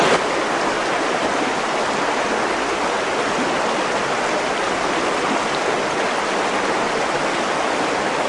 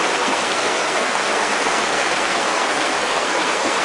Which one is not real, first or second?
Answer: second